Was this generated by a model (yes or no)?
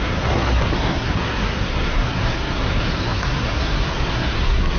yes